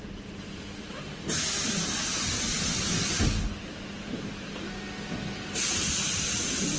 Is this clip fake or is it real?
real